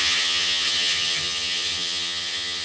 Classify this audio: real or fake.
fake